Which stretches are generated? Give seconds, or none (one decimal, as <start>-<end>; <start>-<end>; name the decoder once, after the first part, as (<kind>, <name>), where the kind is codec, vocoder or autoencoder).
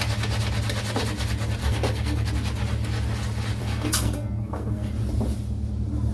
1.6-2.3 (codec, SNAC); 3.6-4.9